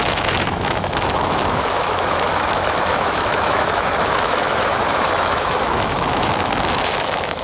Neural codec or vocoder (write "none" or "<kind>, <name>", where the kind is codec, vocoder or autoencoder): autoencoder, DAC-VAE